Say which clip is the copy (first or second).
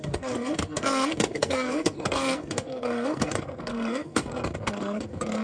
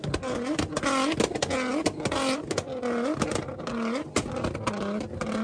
first